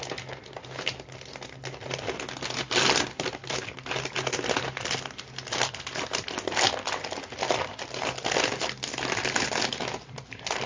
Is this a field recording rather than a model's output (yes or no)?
yes